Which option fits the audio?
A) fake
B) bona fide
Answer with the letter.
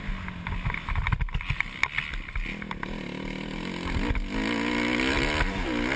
B